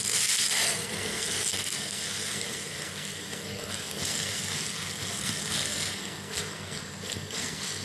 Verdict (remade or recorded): remade